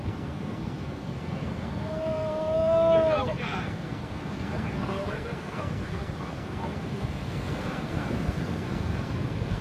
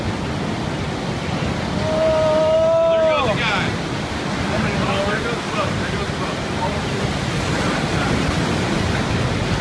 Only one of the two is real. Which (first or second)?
second